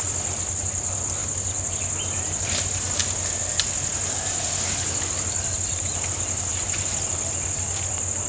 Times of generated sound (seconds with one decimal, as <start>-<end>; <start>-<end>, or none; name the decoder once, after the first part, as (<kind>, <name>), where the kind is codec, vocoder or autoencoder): none